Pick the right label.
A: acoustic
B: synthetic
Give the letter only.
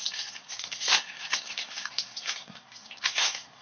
B